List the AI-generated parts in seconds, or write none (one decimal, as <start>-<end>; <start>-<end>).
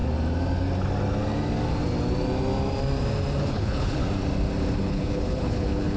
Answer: 3.4-4.0; 4.8-6.0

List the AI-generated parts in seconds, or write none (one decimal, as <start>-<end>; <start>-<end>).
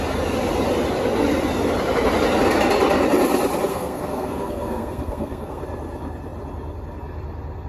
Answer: 3.7-5.6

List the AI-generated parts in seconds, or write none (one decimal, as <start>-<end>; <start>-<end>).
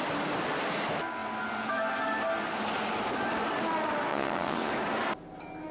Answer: 4.1-4.7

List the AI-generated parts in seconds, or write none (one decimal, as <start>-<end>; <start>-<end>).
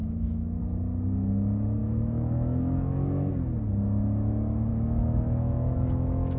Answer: 0.0-0.6; 1.8-3.3; 4.7-6.4